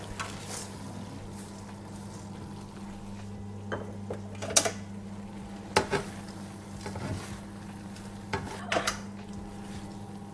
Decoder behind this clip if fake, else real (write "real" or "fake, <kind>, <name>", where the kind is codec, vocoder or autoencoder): real